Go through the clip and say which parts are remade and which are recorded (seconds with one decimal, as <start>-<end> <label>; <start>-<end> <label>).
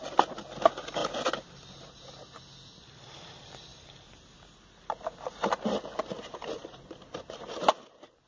0.0-8.3 recorded